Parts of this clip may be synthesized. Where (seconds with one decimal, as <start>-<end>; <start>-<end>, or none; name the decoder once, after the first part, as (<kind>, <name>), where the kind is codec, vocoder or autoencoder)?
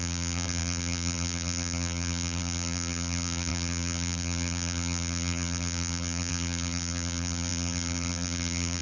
0.0-8.8 (vocoder, BigVGAN v2)